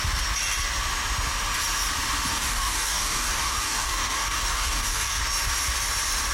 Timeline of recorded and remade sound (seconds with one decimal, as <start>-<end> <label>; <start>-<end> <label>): 0.0-2.3 recorded; 2.3-5.2 remade; 5.2-6.3 recorded